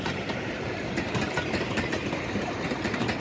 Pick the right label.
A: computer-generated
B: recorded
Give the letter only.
A